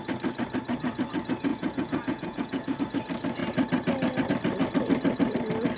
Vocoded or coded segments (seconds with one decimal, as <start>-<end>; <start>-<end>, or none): 1.5-2.8